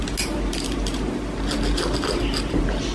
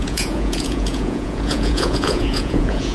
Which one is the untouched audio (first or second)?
first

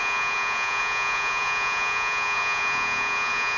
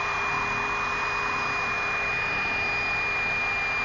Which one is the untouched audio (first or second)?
second